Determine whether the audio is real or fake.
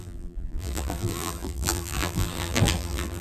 fake